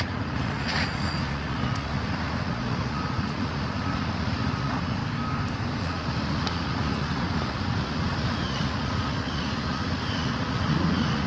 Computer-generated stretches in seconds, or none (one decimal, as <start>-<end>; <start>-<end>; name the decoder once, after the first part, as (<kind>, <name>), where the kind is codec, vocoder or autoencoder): 0.0-5.0 (vocoder, Vocos); 5.8-11.3